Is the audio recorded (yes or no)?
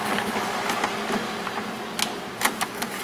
yes